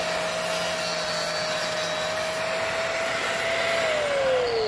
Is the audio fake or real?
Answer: real